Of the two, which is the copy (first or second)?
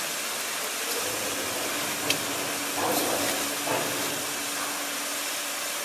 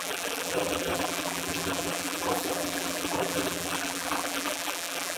second